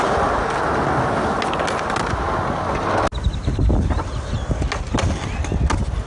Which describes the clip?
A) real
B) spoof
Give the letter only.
A